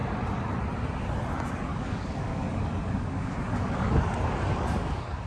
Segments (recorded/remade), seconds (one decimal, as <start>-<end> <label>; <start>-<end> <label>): 0.0-1.7 recorded; 1.7-5.3 remade